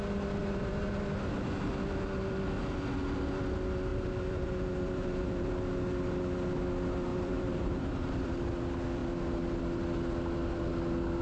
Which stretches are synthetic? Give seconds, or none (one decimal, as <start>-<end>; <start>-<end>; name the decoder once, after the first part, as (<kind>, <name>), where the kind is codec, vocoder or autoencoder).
0.4-1.0 (vocoder, BigVGAN v2); 3.9-5.5; 7.1-8.4

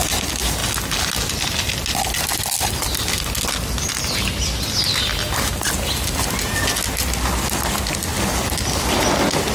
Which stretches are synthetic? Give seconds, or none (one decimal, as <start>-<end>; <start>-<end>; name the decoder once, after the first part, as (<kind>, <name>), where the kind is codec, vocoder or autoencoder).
none

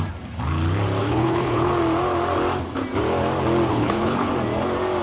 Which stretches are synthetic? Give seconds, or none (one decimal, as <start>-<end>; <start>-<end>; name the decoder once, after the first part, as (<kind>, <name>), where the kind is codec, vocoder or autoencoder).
1.0-1.7 (codec, HILCodec); 3.7-4.3

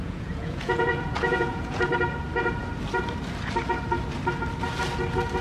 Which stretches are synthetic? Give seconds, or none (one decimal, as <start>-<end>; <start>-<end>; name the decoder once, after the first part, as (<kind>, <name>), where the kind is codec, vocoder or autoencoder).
0.0-1.9 (vocoder, Vocos)